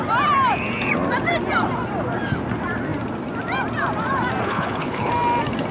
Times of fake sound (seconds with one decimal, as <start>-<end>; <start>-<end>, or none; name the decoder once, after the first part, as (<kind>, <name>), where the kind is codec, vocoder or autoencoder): 4.4-5.1 (codec, HILCodec)

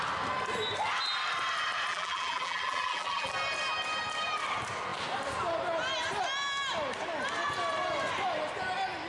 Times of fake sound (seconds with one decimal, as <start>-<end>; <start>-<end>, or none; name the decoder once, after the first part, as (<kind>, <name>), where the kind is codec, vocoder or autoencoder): 1.9-3.3 (vocoder, BigVGAN v2)

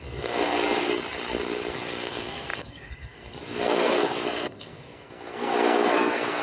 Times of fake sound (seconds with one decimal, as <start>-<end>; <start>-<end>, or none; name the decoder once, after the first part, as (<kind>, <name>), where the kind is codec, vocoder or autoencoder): 0.0-0.9 (codec, SNAC); 1.7-6.4

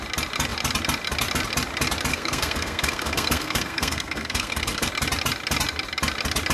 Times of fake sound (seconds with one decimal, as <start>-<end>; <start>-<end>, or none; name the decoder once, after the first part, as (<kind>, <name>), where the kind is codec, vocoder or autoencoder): 2.1-4.9 (codec, SNAC)

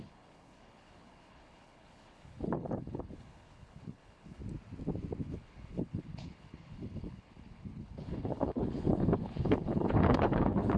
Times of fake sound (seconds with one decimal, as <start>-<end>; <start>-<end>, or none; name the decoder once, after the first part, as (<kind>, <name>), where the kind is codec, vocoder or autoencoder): 0.0-4.4 (codec, HILCodec); 5.2-10.8

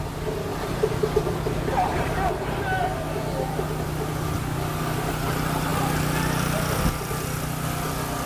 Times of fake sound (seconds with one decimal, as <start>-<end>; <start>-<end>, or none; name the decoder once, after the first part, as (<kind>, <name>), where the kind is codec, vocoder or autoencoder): 0.5-2.3 (vocoder, BigVGAN v2)

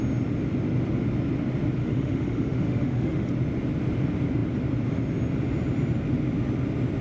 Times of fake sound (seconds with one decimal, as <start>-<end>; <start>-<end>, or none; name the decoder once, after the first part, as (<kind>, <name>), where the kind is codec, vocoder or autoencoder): 1.8-3.3 (autoencoder, DAC-VAE)

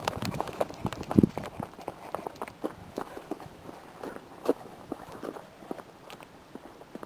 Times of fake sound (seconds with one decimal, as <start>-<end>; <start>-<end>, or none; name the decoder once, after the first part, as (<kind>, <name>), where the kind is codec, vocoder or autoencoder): 0.0-0.6 (autoencoder, DAC-VAE); 2.8-3.7; 4.4-5.2